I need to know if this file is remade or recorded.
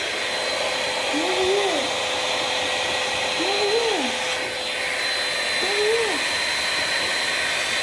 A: recorded